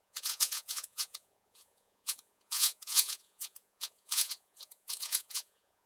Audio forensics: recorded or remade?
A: remade